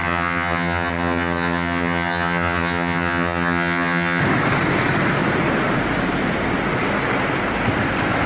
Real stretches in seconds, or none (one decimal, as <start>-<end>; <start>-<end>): 4.2-8.3